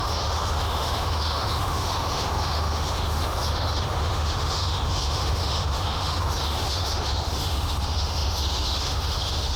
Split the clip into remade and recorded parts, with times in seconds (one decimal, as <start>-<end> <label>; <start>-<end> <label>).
0.0-9.6 remade